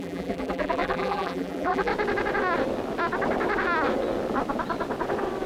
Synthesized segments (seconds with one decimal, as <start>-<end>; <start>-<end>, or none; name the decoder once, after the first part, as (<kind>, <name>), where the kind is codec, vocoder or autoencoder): 0.0-1.9 (vocoder, BigVGAN v2)